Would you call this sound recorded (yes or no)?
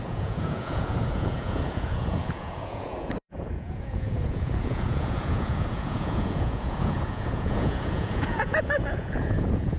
no